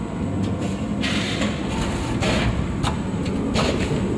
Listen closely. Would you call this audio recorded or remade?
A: recorded